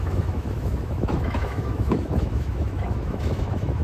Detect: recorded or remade remade